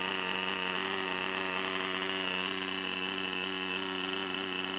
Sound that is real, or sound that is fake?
fake